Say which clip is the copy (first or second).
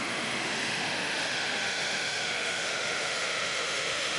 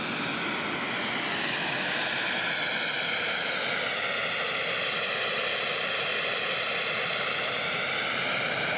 first